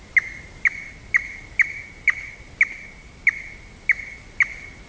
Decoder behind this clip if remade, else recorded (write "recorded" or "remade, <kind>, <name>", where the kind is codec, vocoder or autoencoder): recorded